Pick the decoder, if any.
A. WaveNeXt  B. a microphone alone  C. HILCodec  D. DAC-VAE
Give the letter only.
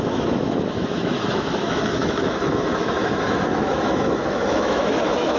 D